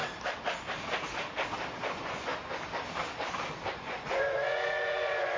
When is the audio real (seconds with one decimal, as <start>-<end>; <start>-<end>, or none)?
0.0-1.9; 2.3-3.7